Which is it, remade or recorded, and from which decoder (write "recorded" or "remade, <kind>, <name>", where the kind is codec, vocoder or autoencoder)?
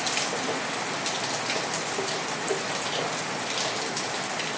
recorded